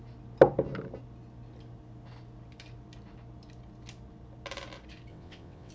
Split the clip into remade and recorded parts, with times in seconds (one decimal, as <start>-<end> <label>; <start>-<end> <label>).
0.0-5.1 recorded; 5.1-5.7 remade